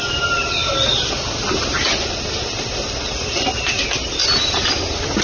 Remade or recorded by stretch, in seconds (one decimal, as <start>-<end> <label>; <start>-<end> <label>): 0.0-5.2 recorded